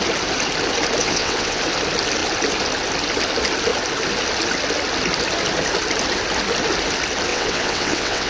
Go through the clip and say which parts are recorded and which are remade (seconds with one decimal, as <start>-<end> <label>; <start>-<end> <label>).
0.0-1.0 recorded; 1.0-1.6 remade; 1.6-7.3 recorded; 7.3-8.3 remade

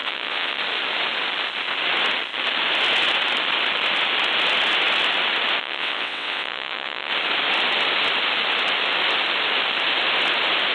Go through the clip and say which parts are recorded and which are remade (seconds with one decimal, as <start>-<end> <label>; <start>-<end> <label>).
0.0-0.6 remade; 0.6-5.6 recorded; 5.6-7.1 remade; 7.1-10.7 recorded

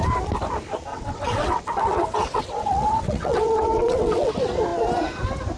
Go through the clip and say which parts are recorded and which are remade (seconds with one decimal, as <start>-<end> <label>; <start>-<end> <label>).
0.0-0.9 recorded; 0.9-4.3 remade; 4.3-5.6 recorded

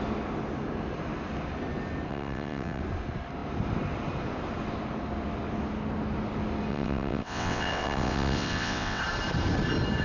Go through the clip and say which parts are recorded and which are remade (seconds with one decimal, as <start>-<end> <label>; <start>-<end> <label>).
0.0-2.1 recorded; 2.1-2.8 remade; 2.8-6.7 recorded; 6.7-9.0 remade; 9.0-10.0 recorded

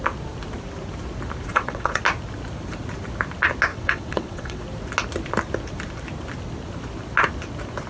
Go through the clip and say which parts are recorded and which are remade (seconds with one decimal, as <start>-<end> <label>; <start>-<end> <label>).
0.0-1.5 recorded; 1.5-2.0 remade; 2.0-3.7 recorded; 3.7-4.6 remade; 4.6-7.9 recorded